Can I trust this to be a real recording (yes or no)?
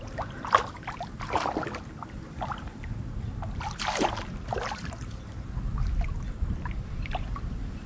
yes